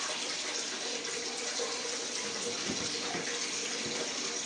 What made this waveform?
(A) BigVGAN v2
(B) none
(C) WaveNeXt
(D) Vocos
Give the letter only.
B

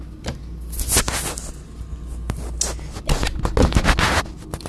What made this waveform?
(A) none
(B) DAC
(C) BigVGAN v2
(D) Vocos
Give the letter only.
A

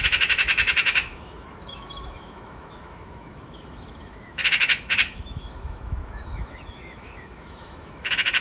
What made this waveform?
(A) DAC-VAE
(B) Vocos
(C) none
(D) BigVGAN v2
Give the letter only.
A